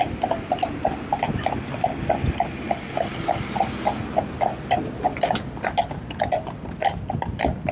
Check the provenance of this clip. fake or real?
real